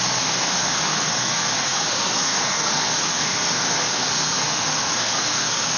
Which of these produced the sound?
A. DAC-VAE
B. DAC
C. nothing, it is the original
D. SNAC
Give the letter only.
D